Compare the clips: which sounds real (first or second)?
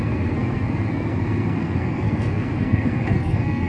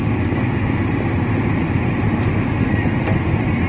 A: second